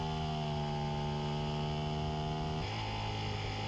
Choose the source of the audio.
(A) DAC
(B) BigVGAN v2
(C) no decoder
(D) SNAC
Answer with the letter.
C